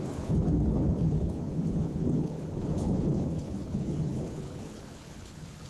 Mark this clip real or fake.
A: fake